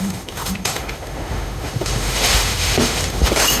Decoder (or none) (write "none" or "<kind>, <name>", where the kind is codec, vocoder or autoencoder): autoencoder, DAC-VAE